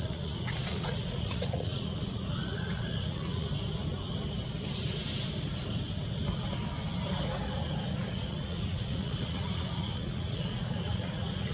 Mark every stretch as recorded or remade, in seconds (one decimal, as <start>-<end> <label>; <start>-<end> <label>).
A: 0.0-3.5 remade; 3.5-8.1 recorded; 8.1-11.5 remade